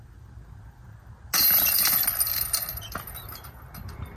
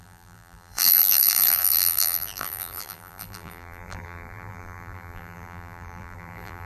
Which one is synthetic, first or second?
second